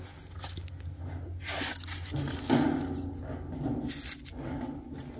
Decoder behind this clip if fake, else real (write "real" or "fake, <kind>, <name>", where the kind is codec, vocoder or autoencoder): real